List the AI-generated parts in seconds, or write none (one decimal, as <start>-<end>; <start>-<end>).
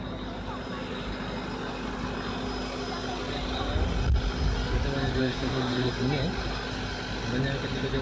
5.2-5.9